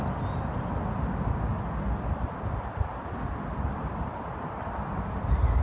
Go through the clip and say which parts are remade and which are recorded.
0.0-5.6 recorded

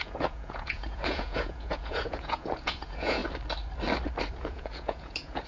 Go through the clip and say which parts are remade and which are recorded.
0.0-3.2 remade; 3.2-4.3 recorded; 4.3-5.5 remade

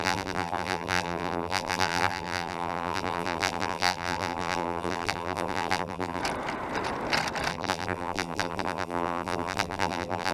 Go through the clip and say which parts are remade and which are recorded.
0.0-6.2 remade; 6.2-7.5 recorded; 7.5-10.3 remade

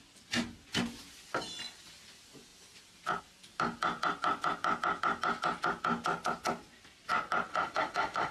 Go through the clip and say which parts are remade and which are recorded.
0.0-7.5 recorded; 7.5-8.3 remade

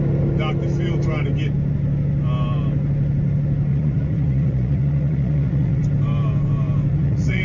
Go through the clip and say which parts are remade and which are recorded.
0.0-3.7 recorded; 3.7-5.8 remade; 5.8-6.9 recorded; 6.9-7.4 remade

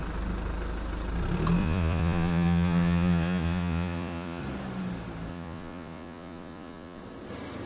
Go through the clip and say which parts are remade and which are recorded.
0.0-1.6 recorded; 1.6-4.4 remade; 4.4-5.3 recorded; 5.3-7.0 remade; 7.0-7.7 recorded

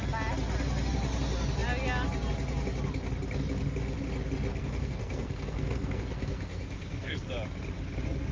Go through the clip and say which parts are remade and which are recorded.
0.0-4.5 recorded; 4.5-7.3 remade; 7.3-8.3 recorded

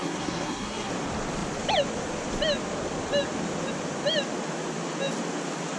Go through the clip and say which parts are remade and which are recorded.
0.0-0.9 remade; 0.9-5.8 recorded